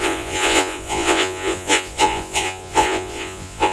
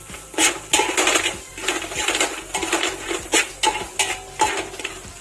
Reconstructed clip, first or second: first